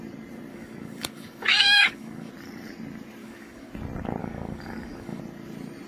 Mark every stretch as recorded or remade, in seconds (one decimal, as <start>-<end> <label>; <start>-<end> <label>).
0.0-0.5 recorded; 0.5-2.3 remade; 2.3-3.2 recorded; 3.2-3.7 remade; 3.7-4.2 recorded; 4.2-5.2 remade; 5.2-5.9 recorded